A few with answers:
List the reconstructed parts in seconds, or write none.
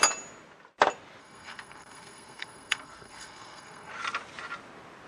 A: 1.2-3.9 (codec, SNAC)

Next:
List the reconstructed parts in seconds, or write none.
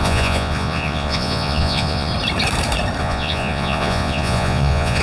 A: 0.0-2.1 (vocoder, Vocos); 3.0-5.0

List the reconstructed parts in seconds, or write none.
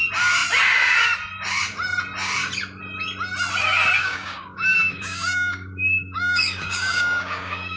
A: 4.0-7.8 (codec, DAC)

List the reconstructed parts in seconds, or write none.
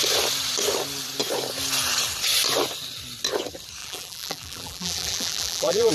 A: 3.8-5.9 (vocoder, BigVGAN v2)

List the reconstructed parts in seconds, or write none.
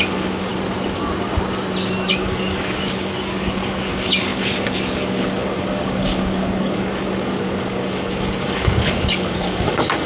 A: 0.0-0.5 (codec, DAC); 2.1-10.1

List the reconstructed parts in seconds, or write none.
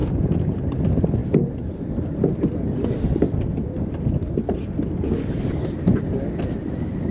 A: 0.0-0.5 (vocoder, Vocos)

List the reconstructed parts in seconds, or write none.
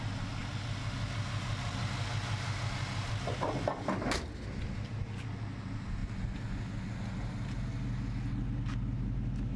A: none